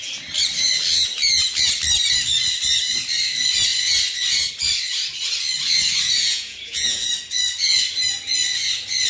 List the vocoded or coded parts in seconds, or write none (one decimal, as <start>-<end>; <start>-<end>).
6.2-7.1

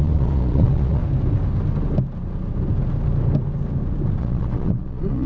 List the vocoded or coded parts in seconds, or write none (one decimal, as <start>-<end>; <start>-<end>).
0.0-1.0; 4.2-5.3